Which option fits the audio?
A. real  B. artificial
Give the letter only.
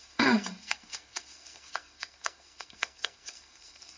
B